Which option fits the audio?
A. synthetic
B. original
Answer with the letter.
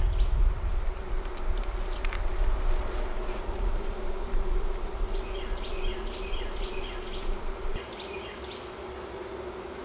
B